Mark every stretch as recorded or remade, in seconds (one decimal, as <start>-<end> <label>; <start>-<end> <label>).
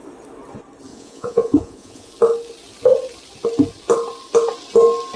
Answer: 0.0-0.9 recorded; 0.9-2.1 remade; 2.1-5.2 recorded